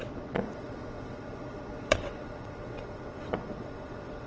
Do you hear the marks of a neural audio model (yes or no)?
yes